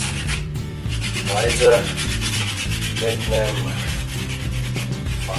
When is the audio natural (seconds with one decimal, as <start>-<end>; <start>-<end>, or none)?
4.5-5.4